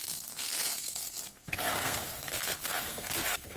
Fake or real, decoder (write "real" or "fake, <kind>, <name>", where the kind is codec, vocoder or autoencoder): fake, codec, SNAC